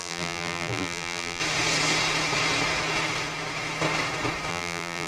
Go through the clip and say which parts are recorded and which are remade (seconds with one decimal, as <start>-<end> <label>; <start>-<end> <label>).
0.0-1.4 remade; 1.4-4.5 recorded; 4.5-5.1 remade